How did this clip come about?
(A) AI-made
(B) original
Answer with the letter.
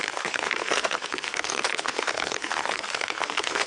A